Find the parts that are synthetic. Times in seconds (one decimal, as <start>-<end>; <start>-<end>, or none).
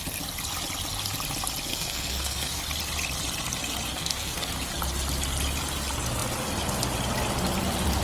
1.7-2.6; 3.9-4.5